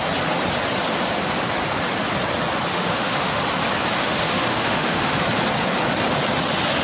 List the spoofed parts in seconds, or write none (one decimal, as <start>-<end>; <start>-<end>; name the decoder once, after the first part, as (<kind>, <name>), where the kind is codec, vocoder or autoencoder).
2.7-3.4 (autoencoder, DAC-VAE); 4.0-5.2